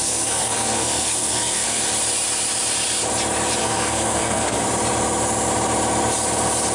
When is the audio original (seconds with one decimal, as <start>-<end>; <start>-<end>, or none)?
1.8-3.6; 4.6-6.7